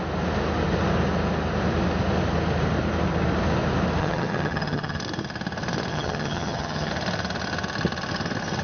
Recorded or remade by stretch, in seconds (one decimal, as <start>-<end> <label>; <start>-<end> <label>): 0.0-4.0 recorded; 4.0-5.0 remade; 5.0-5.9 recorded; 5.9-6.9 remade; 6.9-8.6 recorded